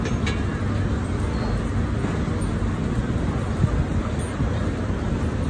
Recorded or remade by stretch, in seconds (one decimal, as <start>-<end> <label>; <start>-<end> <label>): 0.0-5.5 recorded